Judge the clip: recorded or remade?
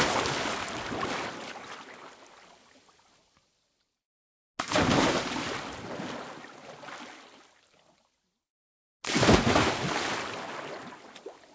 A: recorded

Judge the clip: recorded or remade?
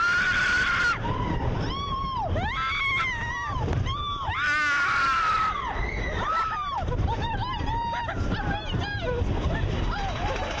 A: recorded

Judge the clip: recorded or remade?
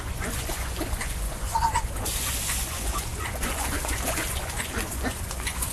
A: remade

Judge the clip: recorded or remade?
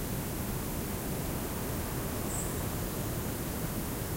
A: recorded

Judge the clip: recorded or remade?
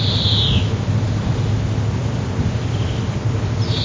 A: recorded